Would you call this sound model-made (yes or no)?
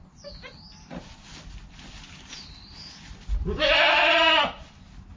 no